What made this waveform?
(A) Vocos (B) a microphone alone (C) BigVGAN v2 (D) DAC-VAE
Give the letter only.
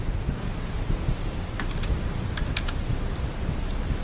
C